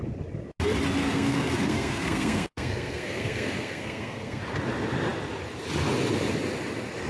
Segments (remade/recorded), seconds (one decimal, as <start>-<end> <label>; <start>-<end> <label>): 0.0-1.0 recorded; 1.0-4.4 remade; 4.4-7.1 recorded